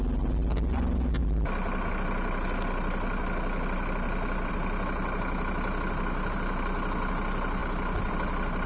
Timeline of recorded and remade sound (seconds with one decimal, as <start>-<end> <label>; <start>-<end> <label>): 0.0-8.7 recorded